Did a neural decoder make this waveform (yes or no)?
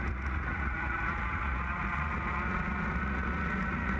yes